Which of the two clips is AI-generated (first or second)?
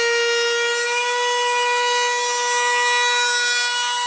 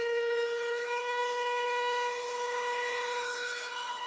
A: second